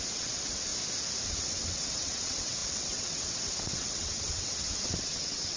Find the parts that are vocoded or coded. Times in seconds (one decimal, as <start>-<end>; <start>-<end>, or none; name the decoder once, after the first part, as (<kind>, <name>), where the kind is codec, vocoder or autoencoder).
0.0-0.7 (vocoder, WaveNeXt); 1.2-5.6